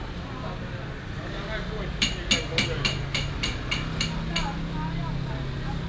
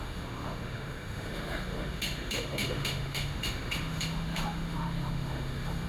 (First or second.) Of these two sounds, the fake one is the second